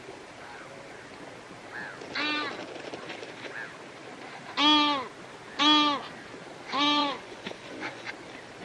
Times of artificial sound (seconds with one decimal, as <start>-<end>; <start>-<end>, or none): 7.0-8.1